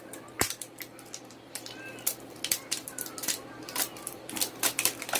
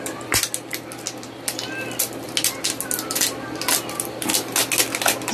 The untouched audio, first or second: second